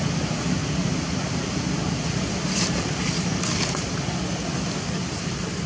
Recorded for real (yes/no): yes